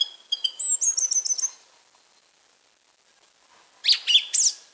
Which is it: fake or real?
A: real